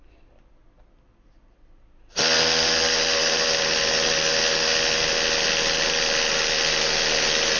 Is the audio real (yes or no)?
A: yes